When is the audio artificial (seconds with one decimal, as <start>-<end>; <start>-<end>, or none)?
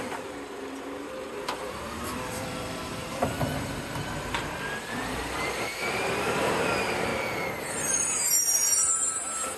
0.0-7.1; 7.6-9.6